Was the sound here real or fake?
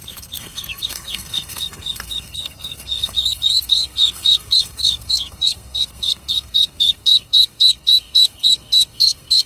fake